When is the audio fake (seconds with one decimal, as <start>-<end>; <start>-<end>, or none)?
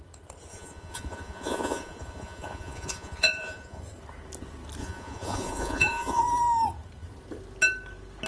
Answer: 0.5-3.8; 4.8-6.2